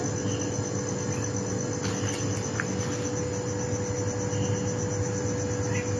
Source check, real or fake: real